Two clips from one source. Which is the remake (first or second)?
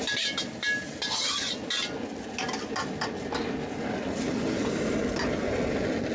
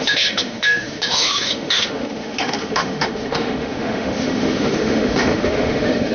second